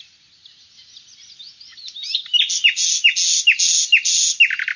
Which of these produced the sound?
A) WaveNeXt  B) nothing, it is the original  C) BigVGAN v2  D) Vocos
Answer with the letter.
B